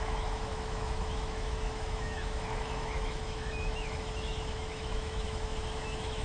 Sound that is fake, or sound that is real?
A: fake